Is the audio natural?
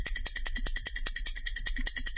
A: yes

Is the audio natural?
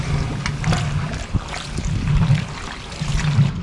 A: yes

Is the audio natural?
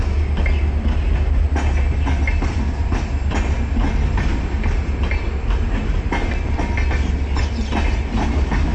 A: yes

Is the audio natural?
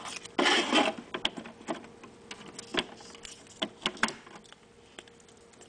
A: yes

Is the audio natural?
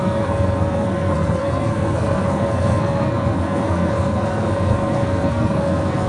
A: no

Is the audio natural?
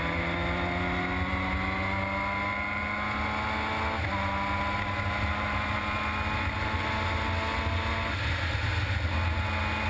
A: yes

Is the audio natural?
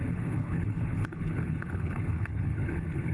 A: no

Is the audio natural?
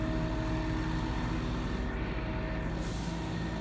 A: yes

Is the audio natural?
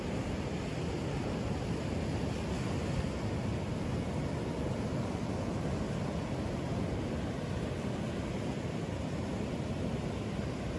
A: yes